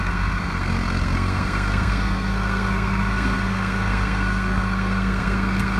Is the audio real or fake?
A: fake